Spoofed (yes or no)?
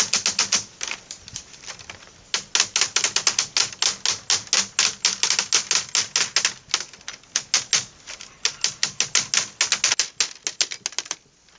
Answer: no